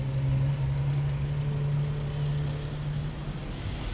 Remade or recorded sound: recorded